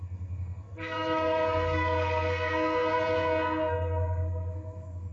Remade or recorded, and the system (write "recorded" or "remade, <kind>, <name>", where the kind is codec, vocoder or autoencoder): remade, codec, SNAC